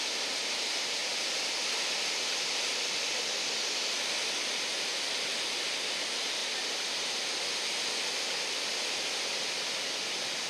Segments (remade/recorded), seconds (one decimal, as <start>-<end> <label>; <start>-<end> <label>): 0.0-10.5 recorded